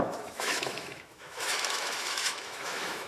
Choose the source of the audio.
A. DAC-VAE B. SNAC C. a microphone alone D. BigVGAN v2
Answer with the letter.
A